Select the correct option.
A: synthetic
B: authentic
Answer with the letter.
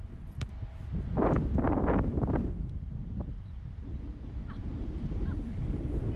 B